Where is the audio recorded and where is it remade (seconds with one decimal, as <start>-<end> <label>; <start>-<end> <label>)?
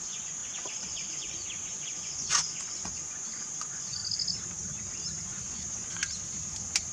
0.0-4.0 remade; 4.0-5.2 recorded; 5.2-6.0 remade; 6.0-6.9 recorded